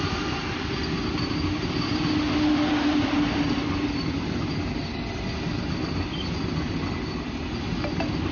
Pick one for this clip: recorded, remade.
recorded